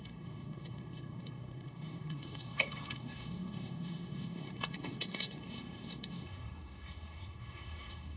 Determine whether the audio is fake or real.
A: fake